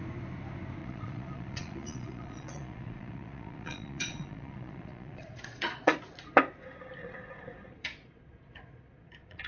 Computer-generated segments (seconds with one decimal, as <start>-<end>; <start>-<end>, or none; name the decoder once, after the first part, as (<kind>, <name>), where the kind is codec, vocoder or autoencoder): 0.8-6.0 (vocoder, Vocos); 7.0-9.5